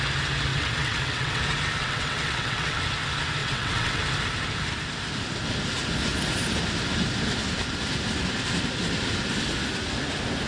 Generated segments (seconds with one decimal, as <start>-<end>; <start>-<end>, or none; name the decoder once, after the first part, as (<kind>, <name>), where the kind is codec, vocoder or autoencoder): 0.5-1.4 (vocoder, WaveNeXt); 1.8-2.8; 3.4-4.0